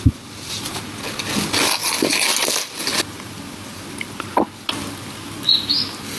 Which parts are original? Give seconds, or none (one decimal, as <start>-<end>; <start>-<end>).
0.0-6.2